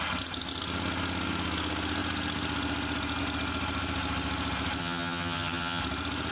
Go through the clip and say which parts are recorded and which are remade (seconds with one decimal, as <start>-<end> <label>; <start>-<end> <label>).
0.0-4.8 recorded; 4.8-5.8 remade; 5.8-6.3 recorded